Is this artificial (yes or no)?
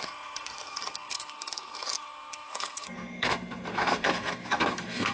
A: yes